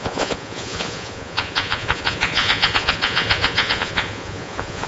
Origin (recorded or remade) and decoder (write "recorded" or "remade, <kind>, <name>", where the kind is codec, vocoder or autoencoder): remade, vocoder, Vocos